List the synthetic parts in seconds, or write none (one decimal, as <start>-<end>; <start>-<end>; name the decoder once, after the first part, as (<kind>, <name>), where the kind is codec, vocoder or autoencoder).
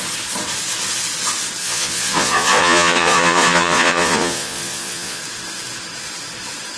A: 1.6-5.2 (vocoder, Vocos)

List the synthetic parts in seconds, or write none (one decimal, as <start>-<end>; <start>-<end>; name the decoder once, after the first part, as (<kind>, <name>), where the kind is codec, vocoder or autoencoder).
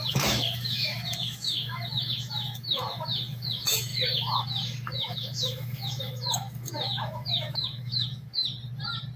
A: 0.0-8.4 (autoencoder, DAC-VAE)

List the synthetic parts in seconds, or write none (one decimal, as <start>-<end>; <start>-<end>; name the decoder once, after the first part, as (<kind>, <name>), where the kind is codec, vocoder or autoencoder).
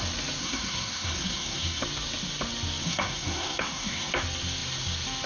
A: 0.4-1.8 (codec, SNAC); 2.8-4.1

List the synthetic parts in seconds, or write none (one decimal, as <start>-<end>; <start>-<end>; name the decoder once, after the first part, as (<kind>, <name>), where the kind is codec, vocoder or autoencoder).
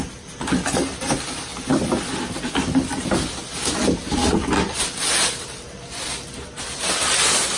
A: none